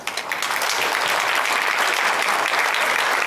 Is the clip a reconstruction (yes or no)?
no